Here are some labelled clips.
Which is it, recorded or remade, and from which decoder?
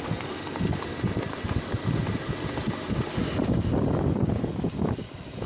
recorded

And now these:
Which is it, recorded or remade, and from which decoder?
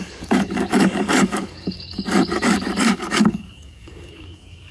remade, codec, DAC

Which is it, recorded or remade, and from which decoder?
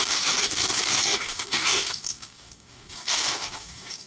remade, codec, DAC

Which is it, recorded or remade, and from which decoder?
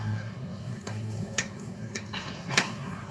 remade, codec, SNAC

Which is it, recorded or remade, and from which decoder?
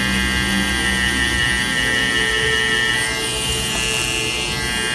recorded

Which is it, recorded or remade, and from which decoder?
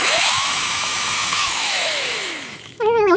remade, autoencoder, DAC-VAE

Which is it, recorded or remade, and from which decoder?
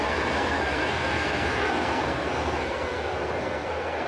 remade, codec, SNAC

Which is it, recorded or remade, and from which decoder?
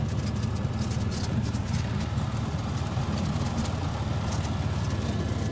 recorded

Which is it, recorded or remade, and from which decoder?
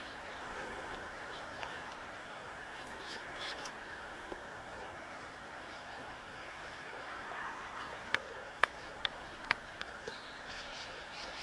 remade, codec, SNAC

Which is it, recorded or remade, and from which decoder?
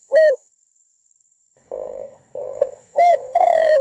remade, codec, SNAC